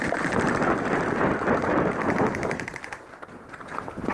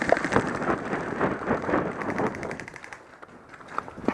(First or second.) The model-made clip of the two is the first